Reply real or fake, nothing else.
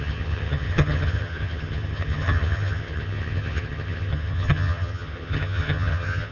fake